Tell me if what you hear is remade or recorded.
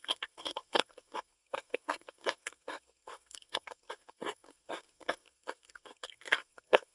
remade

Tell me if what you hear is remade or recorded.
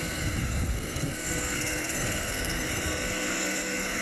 remade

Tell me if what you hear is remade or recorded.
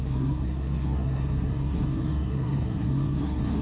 remade